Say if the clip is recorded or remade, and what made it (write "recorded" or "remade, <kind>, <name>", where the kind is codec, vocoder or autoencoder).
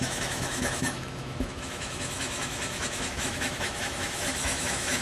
remade, autoencoder, DAC-VAE